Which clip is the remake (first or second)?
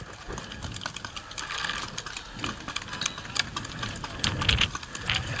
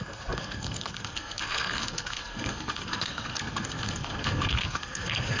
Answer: second